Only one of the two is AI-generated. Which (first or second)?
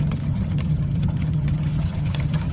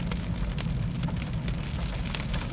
first